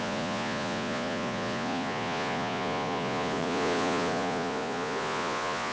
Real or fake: fake